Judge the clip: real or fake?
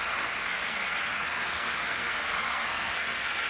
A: fake